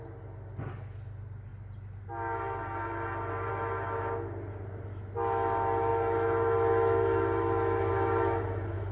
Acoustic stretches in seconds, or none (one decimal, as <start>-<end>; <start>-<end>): 0.0-8.9